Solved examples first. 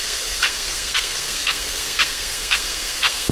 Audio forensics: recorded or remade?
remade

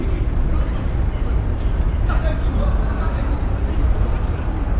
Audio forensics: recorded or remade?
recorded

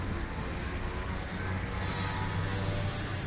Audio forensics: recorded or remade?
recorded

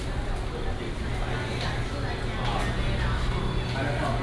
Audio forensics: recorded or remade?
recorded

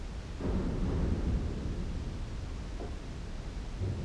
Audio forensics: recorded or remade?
recorded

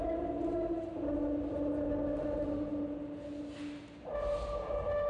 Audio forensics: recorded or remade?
recorded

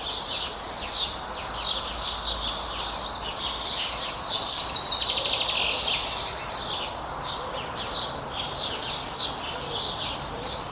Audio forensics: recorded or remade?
recorded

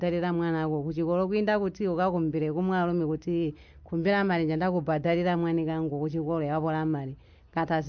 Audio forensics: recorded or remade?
recorded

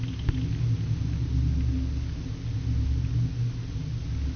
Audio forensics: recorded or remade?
recorded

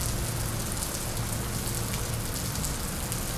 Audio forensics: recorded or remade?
recorded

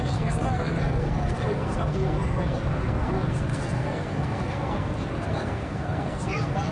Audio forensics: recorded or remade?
remade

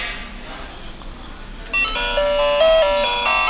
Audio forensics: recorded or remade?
recorded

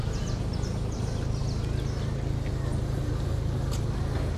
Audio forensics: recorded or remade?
recorded